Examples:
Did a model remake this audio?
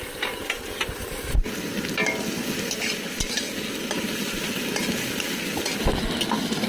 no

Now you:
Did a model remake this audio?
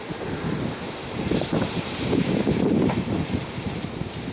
yes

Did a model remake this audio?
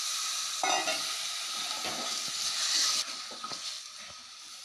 no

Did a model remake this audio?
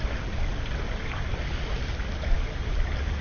no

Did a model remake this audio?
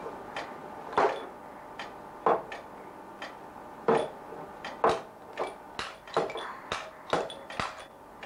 no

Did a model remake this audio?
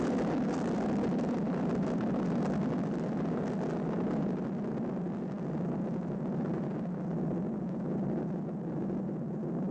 no